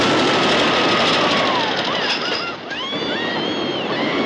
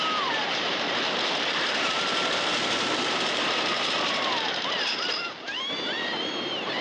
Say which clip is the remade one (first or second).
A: second